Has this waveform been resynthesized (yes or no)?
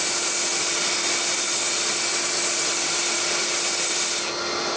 no